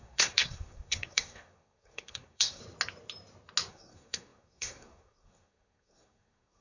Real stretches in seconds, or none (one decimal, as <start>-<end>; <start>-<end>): 2.6-3.7

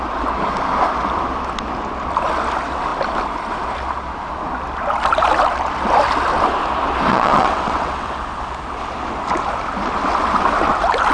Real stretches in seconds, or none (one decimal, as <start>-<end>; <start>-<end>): 0.0-7.1; 8.2-11.1

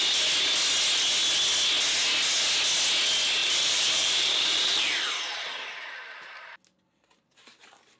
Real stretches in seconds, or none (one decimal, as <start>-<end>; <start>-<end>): 0.0-3.4; 5.1-8.0

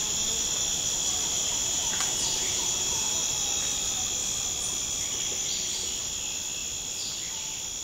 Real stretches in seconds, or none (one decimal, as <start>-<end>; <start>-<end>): 0.0-1.6; 3.2-7.8

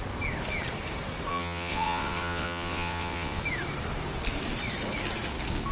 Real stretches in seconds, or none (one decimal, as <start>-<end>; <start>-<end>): 0.0-1.3; 3.4-5.7